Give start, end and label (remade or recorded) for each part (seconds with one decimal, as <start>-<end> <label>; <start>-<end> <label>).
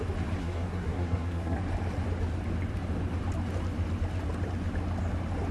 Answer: 0.0-0.4 recorded; 0.4-1.6 remade; 1.6-5.5 recorded